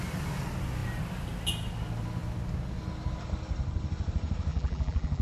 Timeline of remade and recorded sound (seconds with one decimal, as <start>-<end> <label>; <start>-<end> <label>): 0.0-4.5 recorded; 4.5-5.2 remade